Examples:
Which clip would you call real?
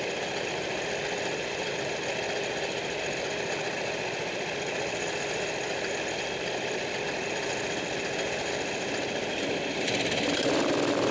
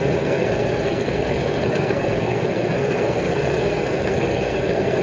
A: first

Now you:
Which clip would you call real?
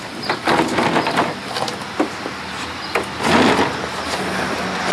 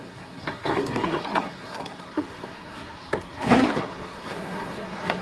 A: first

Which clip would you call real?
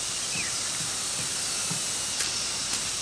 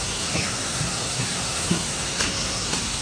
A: first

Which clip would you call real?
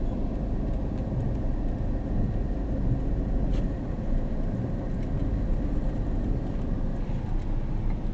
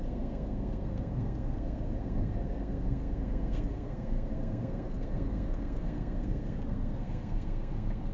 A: first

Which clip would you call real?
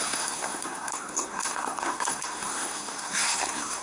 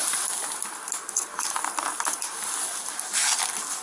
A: second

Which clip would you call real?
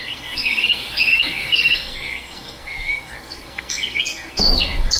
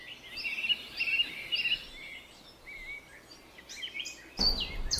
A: second